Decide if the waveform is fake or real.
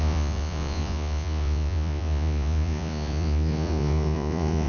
fake